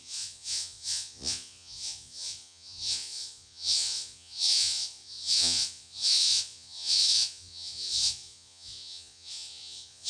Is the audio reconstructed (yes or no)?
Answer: yes